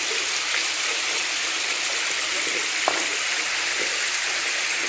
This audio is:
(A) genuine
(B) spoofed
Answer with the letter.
A